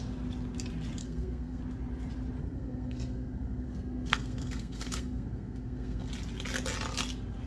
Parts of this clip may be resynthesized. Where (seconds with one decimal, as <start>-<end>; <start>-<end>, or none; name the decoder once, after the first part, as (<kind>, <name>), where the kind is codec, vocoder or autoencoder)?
1.0-1.6 (codec, SNAC); 2.4-6.1